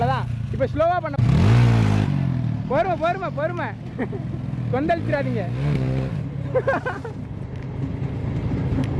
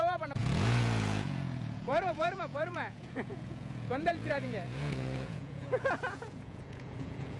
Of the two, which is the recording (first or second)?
first